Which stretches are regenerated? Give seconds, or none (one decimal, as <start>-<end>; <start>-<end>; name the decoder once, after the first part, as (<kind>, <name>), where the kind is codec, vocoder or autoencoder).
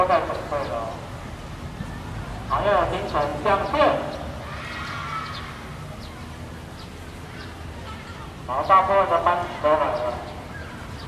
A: none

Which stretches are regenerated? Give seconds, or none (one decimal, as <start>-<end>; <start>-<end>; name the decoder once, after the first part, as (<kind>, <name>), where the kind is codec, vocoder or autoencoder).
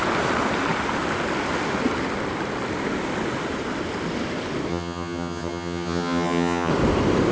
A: 4.7-6.7 (vocoder, HiFi-GAN)